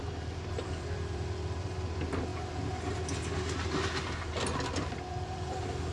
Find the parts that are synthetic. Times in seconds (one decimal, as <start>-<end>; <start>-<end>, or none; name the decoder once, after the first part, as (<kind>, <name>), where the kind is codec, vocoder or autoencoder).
0.0-2.3 (vocoder, BigVGAN v2); 4.3-5.9